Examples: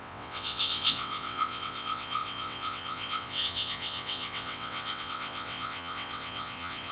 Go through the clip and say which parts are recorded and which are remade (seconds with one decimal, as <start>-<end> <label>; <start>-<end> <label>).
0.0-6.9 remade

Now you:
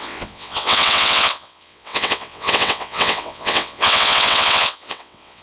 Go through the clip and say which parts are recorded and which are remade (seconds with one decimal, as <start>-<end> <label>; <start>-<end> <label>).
0.0-5.4 remade

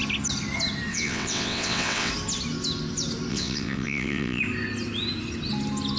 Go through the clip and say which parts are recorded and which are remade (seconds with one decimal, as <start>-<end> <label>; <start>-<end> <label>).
0.0-0.9 recorded; 0.9-2.1 remade; 2.1-3.3 recorded; 3.3-4.4 remade; 4.4-6.0 recorded

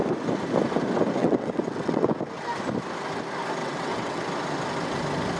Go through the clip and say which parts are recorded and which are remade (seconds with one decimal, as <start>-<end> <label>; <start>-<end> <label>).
0.0-1.2 recorded; 1.2-2.1 remade; 2.1-3.6 recorded; 3.6-4.2 remade; 4.2-5.4 recorded

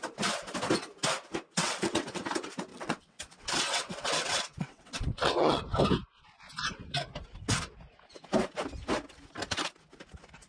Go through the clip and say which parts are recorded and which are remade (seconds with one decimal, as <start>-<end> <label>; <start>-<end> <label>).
0.0-1.6 recorded; 1.6-2.2 remade; 2.2-2.7 recorded; 2.7-5.6 remade; 5.6-10.5 recorded